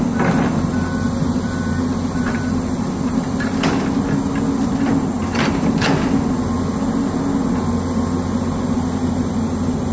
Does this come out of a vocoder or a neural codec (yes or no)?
no